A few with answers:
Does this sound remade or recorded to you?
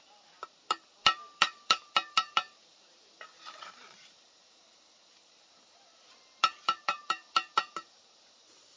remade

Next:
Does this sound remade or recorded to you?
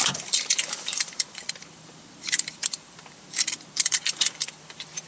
remade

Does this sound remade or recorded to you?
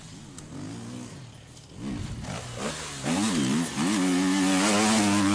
recorded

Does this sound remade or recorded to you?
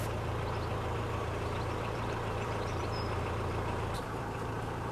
remade